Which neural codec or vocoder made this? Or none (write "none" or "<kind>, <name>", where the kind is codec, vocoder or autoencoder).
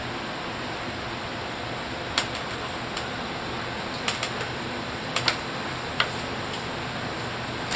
none